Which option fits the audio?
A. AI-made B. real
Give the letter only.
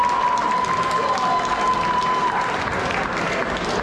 B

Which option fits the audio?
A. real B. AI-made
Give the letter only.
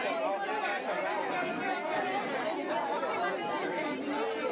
A